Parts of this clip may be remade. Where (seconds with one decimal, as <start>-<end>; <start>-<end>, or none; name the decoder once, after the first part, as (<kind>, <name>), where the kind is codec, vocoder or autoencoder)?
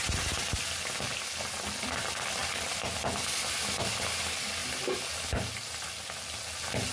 none